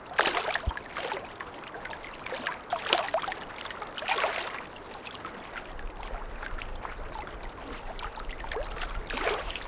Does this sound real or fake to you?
real